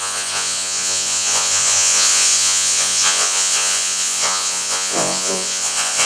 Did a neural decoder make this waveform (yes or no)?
yes